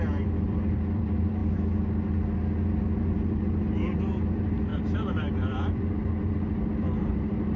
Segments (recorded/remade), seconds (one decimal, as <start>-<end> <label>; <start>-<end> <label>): 0.0-1.4 remade; 1.4-3.0 recorded; 3.0-7.6 remade